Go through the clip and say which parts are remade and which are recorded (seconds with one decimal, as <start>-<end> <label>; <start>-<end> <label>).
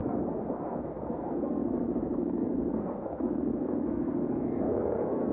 0.0-5.3 remade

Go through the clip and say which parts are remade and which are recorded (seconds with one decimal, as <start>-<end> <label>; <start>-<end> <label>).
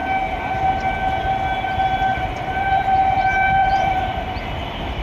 0.0-2.1 recorded; 2.1-4.1 remade; 4.1-5.0 recorded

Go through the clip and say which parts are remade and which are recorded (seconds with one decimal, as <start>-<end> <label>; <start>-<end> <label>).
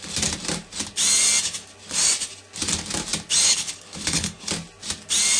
0.0-3.4 recorded; 3.4-4.5 remade; 4.5-5.4 recorded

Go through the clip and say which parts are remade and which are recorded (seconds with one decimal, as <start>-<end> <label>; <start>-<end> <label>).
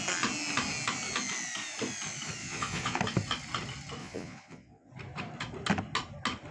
0.0-2.4 recorded; 2.4-3.0 remade; 3.0-4.0 recorded; 4.0-4.9 remade; 4.9-6.5 recorded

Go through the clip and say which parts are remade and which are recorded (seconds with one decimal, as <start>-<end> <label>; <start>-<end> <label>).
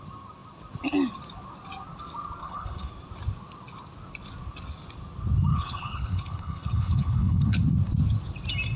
0.0-2.4 recorded; 2.4-2.9 remade; 2.9-5.5 recorded; 5.5-7.6 remade; 7.6-8.8 recorded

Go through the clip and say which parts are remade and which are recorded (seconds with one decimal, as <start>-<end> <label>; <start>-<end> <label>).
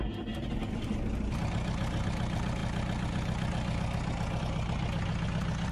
0.0-5.7 recorded